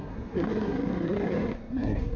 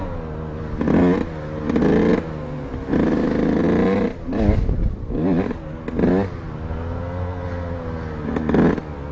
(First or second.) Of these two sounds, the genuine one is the second